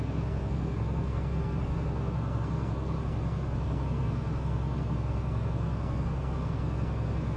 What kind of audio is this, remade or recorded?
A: remade